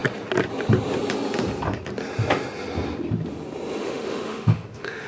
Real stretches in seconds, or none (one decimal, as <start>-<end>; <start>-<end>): 0.0-3.8